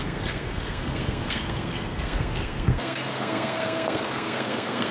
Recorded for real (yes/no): no